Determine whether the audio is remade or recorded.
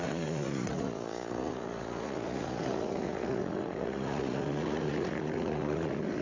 remade